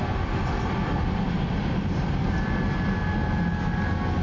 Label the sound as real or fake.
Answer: real